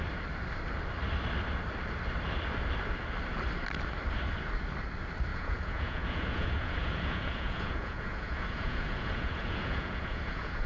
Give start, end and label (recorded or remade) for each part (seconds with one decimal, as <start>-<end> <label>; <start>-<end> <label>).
0.0-5.3 recorded; 5.3-10.7 remade